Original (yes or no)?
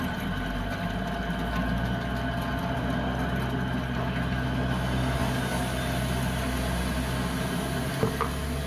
yes